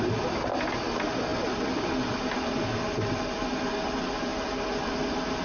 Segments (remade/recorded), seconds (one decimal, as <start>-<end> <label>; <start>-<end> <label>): 0.0-5.4 recorded

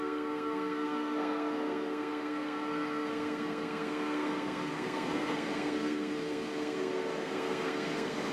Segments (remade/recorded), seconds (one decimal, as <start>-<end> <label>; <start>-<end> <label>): 0.0-8.3 remade

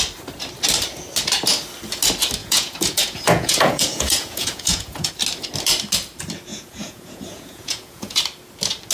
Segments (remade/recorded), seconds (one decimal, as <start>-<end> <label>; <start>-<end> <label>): 0.0-2.4 recorded; 2.4-5.1 remade; 5.1-6.5 recorded; 6.5-8.2 remade; 8.2-8.9 recorded

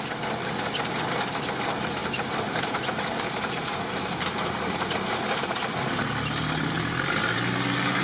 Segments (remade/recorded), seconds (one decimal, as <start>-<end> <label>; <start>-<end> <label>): 0.0-2.0 recorded; 2.0-5.8 remade; 5.8-8.0 recorded